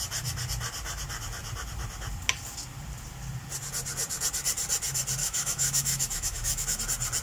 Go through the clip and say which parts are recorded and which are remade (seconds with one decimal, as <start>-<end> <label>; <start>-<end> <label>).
0.0-5.2 recorded; 5.2-6.8 remade; 6.8-7.2 recorded